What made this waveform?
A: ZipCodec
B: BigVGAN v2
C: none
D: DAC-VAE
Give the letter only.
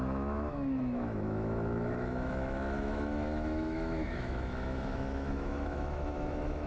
D